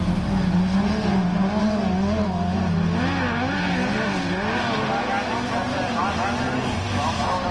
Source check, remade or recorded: recorded